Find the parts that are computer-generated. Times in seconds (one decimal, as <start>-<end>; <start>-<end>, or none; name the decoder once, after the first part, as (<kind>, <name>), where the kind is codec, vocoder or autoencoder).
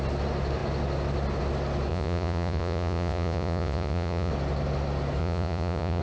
1.9-4.3 (vocoder, Vocos); 5.2-6.0